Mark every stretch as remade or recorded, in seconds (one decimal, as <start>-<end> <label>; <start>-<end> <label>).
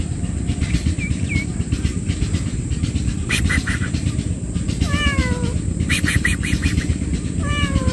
0.0-5.2 remade; 5.2-5.9 recorded; 5.9-7.9 remade